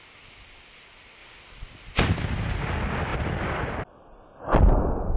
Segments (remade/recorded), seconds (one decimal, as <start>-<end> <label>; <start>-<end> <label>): 0.0-5.2 recorded